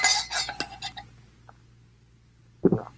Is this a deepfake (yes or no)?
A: no